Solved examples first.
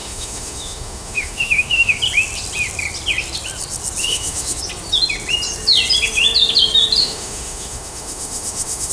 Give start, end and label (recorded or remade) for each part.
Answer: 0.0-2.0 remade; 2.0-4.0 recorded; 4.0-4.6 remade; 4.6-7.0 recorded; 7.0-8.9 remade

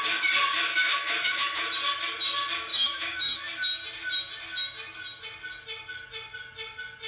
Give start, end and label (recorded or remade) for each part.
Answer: 0.0-0.7 recorded; 0.7-1.7 remade; 1.7-2.7 recorded; 2.7-3.4 remade; 3.4-7.1 recorded

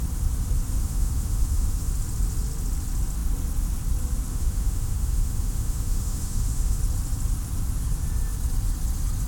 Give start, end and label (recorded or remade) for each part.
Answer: 0.0-0.8 recorded; 0.8-1.9 remade; 1.9-4.3 recorded; 4.3-6.8 remade; 6.8-9.3 recorded